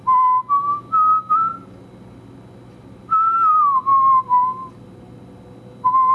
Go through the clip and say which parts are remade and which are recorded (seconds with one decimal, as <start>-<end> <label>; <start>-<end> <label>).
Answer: 0.0-6.1 recorded